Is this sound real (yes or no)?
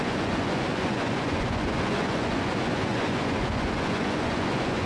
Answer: no